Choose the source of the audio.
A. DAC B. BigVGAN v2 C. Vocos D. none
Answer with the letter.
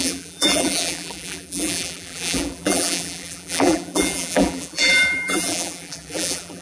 B